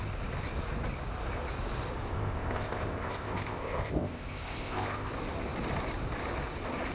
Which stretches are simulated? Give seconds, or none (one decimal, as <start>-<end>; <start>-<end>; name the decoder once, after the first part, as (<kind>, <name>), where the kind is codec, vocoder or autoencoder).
2.1-5.1 (codec, ZipCodec)